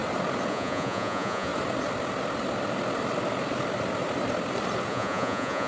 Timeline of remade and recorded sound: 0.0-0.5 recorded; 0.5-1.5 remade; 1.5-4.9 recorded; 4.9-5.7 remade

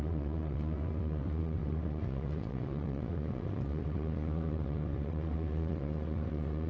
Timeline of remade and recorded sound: 0.0-6.7 remade

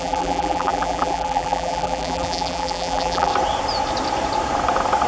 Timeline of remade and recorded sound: 0.0-3.3 remade; 3.3-5.1 recorded

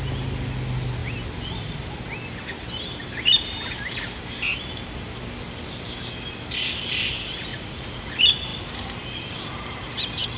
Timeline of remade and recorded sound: 0.0-7.5 recorded; 7.5-8.1 remade; 8.1-10.4 recorded

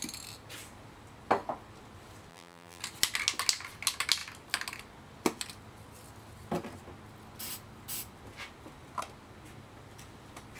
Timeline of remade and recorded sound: 0.0-2.3 recorded; 2.3-2.8 remade; 2.8-10.6 recorded